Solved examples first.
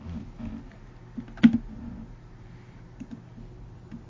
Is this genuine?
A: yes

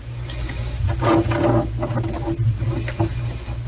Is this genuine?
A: yes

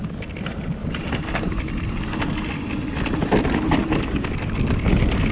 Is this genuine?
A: yes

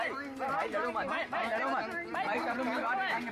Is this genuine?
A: yes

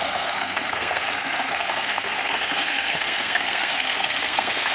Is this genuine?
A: no